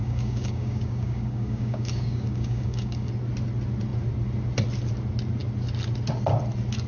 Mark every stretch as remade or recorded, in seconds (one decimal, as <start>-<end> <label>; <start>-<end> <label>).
0.0-3.1 remade; 3.1-6.9 recorded

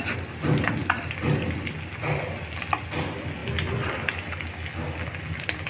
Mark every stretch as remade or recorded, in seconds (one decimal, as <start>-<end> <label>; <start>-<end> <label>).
0.0-5.7 recorded

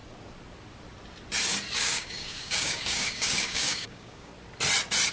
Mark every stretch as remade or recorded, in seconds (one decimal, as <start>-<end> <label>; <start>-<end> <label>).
0.0-1.7 recorded; 1.7-4.3 remade; 4.3-5.1 recorded